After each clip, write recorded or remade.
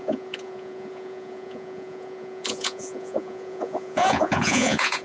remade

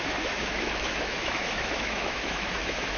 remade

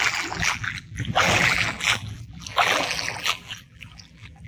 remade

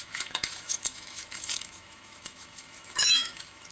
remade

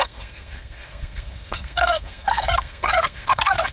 remade